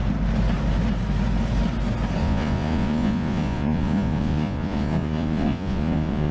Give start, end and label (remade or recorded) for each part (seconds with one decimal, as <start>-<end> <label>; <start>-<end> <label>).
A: 0.0-2.2 recorded; 2.2-6.3 remade